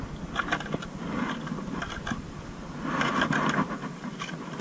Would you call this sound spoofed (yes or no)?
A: no